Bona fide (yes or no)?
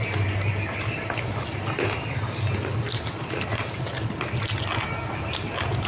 yes